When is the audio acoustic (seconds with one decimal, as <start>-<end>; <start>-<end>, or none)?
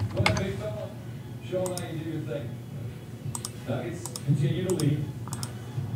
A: 0.0-2.8; 4.9-6.0